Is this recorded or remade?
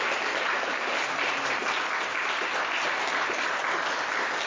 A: recorded